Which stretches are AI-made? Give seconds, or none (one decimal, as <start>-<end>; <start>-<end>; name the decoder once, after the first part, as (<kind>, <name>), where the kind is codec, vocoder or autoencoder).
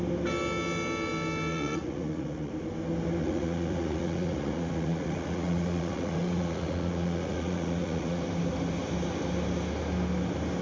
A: 1.5-2.5 (vocoder, Vocos); 3.2-8.2